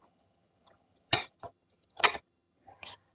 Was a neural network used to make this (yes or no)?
yes